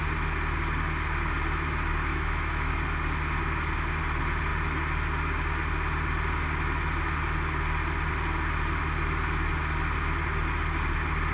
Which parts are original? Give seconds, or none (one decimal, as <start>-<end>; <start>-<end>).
0.0-2.1; 2.7-11.3